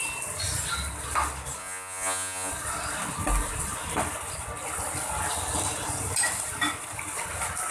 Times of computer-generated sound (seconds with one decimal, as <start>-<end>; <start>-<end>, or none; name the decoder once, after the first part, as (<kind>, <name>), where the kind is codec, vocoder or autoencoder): 1.6-2.5 (vocoder, Vocos)